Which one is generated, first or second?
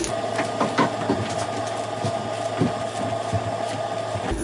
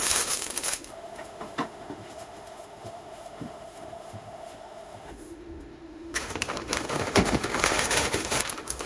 second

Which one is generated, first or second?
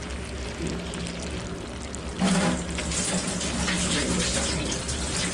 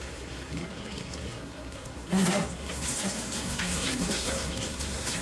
second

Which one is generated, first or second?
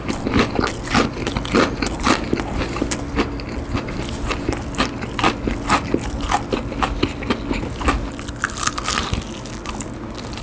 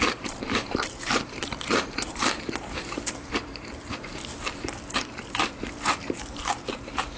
second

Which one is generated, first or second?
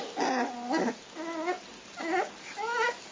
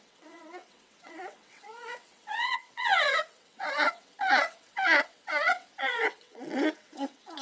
second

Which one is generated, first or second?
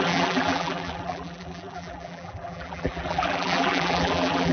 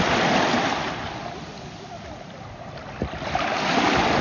first